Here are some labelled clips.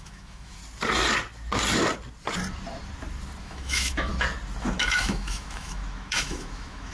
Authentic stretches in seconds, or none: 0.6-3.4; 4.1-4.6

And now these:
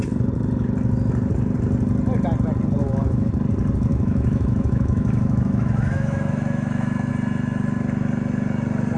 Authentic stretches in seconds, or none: 0.0-2.8; 3.3-3.9; 7.1-9.0

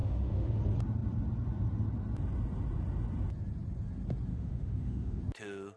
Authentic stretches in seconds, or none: 0.6-4.3; 5.2-5.8

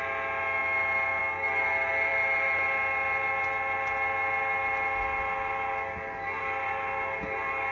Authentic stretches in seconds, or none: 0.0-7.7

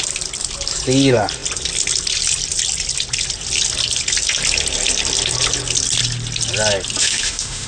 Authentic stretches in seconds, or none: 0.0-7.0

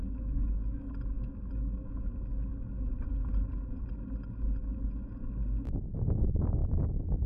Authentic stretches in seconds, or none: 2.1-6.6